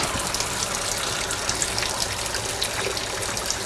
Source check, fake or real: real